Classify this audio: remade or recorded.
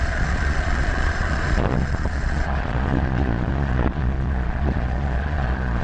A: remade